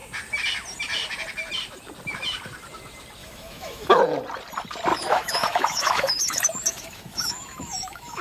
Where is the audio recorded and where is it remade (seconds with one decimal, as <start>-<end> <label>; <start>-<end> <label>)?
0.0-3.2 recorded; 3.2-4.0 remade; 4.0-4.9 recorded; 4.9-8.2 remade